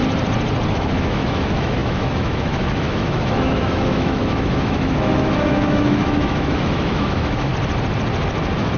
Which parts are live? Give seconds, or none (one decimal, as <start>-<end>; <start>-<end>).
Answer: 0.0-0.7; 7.5-8.8